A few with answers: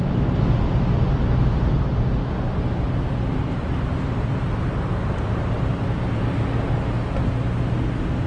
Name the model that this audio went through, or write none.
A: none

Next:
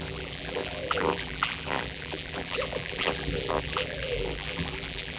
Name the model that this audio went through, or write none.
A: vocoder, BigVGAN v2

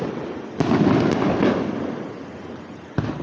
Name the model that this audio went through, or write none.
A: none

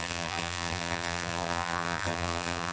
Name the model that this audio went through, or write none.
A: vocoder, BigVGAN v2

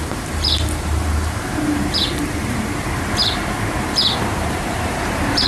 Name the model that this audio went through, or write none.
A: vocoder, BigVGAN v2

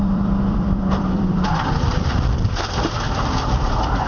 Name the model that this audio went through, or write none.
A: vocoder, BigVGAN v2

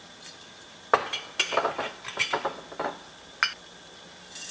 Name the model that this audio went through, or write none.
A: none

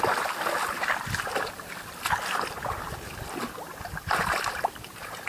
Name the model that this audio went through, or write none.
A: none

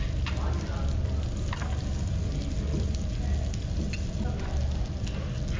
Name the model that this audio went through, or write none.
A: none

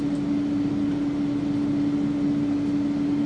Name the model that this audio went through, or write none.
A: none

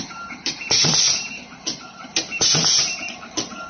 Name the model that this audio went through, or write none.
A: vocoder, BigVGAN v2